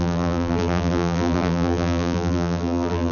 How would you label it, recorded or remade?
remade